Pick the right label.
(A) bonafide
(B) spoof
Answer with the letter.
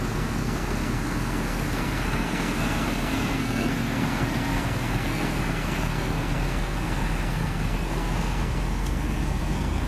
B